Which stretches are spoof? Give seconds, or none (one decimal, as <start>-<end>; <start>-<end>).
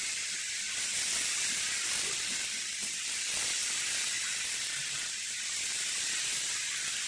none